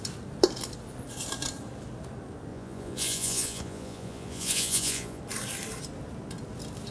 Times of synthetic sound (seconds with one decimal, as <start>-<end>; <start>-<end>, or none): 2.5-5.2